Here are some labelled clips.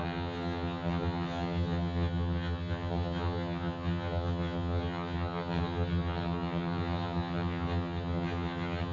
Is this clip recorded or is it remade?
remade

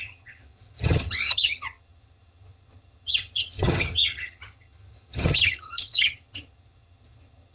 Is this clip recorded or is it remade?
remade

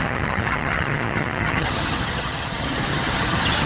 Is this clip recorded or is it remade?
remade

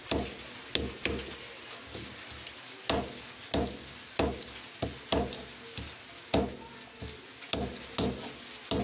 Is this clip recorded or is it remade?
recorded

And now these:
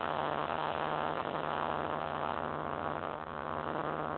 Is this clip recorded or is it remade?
remade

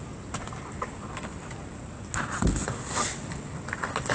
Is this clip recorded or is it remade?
recorded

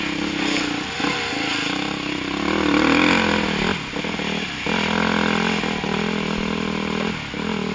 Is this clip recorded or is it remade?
recorded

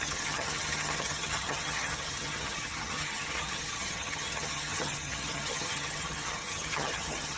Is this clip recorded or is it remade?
remade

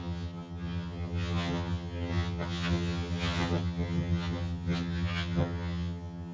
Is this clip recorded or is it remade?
remade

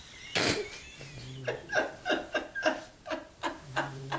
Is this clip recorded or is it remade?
recorded